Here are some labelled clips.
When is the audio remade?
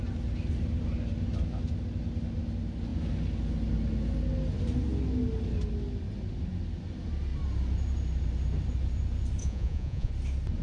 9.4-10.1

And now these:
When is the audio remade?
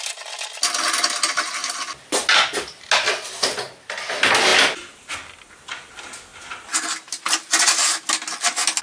none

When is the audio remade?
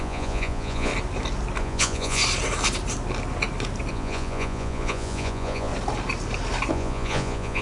0.0-0.9; 1.6-2.2; 3.9-5.7; 6.7-7.6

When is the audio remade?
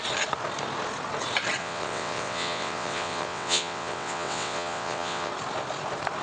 1.6-5.3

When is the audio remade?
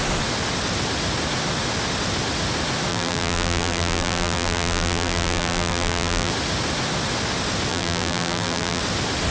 2.9-6.3; 7.7-8.8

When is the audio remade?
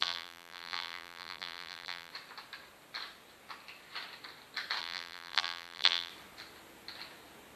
0.0-2.1; 4.8-6.1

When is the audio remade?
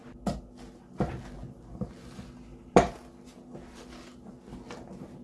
none